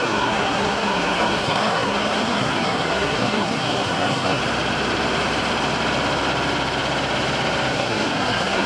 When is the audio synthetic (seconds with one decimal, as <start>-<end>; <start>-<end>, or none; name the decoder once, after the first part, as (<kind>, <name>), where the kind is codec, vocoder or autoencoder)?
0.0-4.4 (codec, SNAC); 7.7-8.7